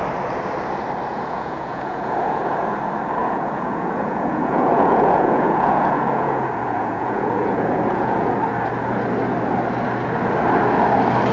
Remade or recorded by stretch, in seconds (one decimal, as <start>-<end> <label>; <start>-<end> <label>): 0.0-1.1 recorded; 1.1-2.4 remade; 2.4-3.2 recorded; 3.2-8.3 remade; 8.3-11.3 recorded